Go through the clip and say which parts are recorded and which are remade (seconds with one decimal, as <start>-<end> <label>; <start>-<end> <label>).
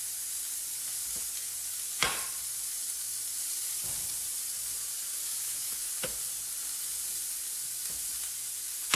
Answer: 0.0-5.2 recorded; 5.2-5.8 remade; 5.8-8.9 recorded